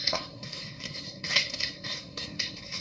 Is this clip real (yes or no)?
no